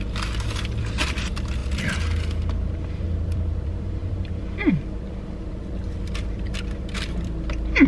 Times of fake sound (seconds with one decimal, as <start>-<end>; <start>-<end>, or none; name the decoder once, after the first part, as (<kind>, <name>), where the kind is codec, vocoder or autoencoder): 0.0-1.6 (vocoder, BigVGAN v2); 2.7-7.9